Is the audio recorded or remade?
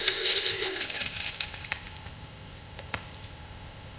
remade